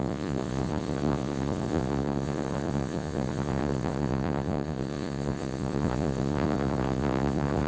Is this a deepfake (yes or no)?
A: yes